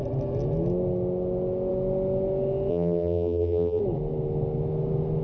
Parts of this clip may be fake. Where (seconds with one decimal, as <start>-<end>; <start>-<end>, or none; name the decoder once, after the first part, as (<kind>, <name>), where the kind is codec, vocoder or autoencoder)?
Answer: 2.7-3.8 (vocoder, BigVGAN v2)